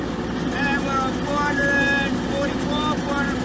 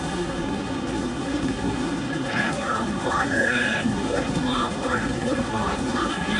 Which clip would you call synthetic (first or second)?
second